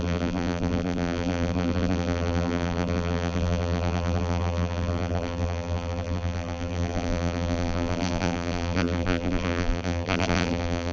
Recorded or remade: remade